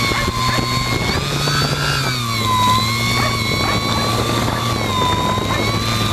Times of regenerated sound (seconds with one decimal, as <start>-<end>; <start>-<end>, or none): 4.1-4.7